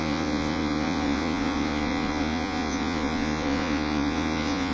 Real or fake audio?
fake